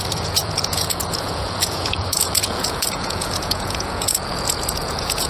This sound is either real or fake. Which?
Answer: fake